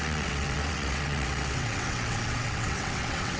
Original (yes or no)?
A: no